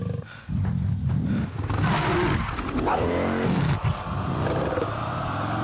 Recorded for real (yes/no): yes